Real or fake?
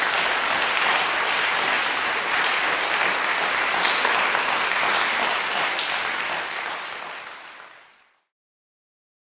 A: fake